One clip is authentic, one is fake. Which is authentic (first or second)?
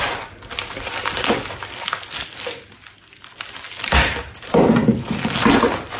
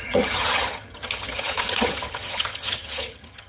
first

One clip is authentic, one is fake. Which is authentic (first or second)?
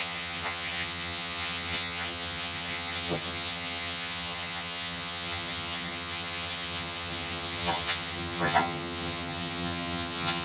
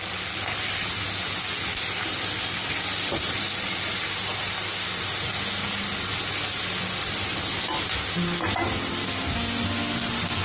second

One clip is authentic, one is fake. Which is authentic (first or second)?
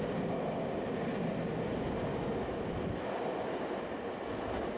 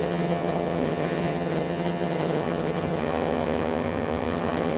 first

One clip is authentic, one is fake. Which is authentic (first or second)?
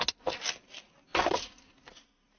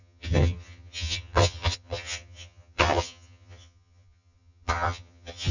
first